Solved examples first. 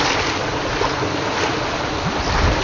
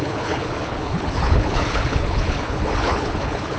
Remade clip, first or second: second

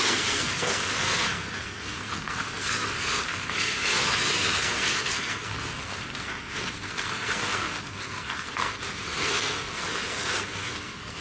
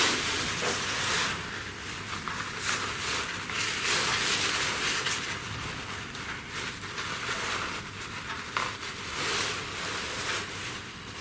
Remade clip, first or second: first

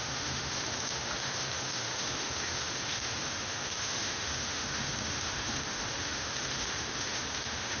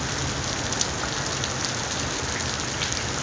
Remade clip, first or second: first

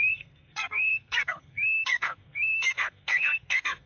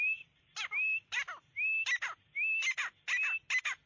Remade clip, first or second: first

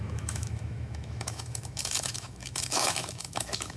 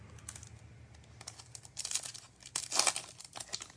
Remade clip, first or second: first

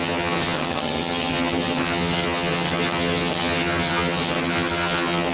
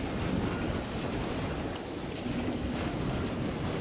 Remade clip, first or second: first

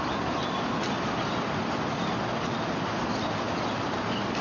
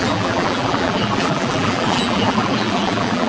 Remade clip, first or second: second